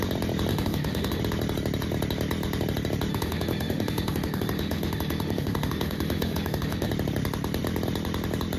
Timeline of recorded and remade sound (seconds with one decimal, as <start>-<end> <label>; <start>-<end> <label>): 0.0-0.5 recorded; 0.5-1.2 remade; 1.2-3.1 recorded; 3.1-6.9 remade; 6.9-8.6 recorded

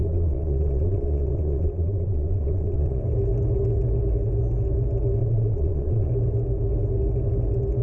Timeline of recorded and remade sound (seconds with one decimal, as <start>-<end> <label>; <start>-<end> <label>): 0.0-3.0 remade; 3.0-5.2 recorded; 5.2-6.1 remade; 6.1-7.8 recorded

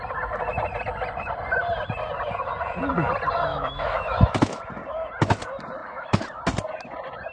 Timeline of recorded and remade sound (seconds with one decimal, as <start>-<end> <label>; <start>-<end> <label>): 0.0-3.5 recorded; 3.5-4.6 remade; 4.6-5.8 recorded; 5.8-6.4 remade; 6.4-7.3 recorded

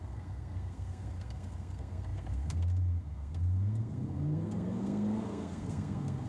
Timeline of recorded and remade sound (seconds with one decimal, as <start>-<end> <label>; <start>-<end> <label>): 0.0-6.3 remade

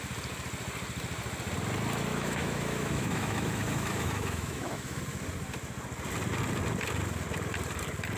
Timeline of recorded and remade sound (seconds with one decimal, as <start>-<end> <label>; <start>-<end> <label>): 0.0-2.1 recorded; 2.1-5.0 remade; 5.0-8.2 recorded

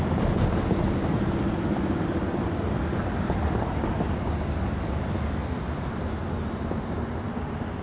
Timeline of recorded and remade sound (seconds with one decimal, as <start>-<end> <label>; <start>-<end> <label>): 0.0-7.8 recorded

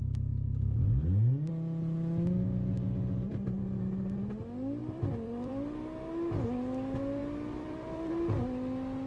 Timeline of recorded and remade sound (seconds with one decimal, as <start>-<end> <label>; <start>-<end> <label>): 0.0-4.8 recorded; 4.8-5.5 remade; 5.5-7.2 recorded; 7.2-8.1 remade; 8.1-9.1 recorded

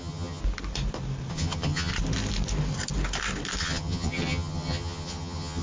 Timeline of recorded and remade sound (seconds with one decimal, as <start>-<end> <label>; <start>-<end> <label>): 0.0-0.4 remade; 0.4-1.3 recorded; 1.3-1.9 remade; 1.9-3.6 recorded; 3.6-5.6 remade